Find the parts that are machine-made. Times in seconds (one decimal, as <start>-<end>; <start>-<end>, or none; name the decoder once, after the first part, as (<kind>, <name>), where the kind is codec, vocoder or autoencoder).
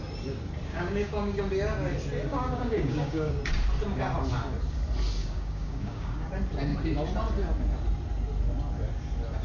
0.7-1.4 (codec, DAC); 2.3-3.4; 5.2-6.3